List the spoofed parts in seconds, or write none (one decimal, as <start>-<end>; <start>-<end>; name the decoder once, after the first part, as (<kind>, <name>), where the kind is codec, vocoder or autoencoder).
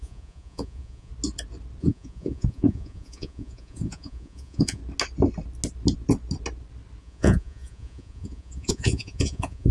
0.0-1.1 (vocoder, Vocos); 1.8-4.8; 7.0-9.7